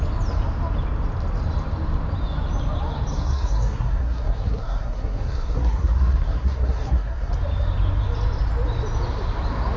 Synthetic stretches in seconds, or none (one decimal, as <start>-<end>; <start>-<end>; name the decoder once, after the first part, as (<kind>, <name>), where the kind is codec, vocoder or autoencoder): 3.1-7.3 (codec, SNAC)